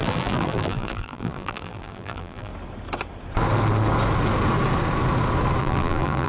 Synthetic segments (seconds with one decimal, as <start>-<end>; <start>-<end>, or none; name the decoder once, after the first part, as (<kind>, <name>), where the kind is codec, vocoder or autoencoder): 0.0-2.5 (vocoder, BigVGAN v2); 5.6-6.3